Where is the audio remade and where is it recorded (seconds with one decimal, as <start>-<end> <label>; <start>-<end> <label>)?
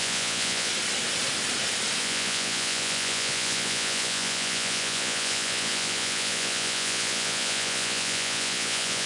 0.0-0.7 remade; 0.7-2.0 recorded; 2.0-9.1 remade